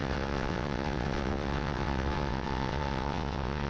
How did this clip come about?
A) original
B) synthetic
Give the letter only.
B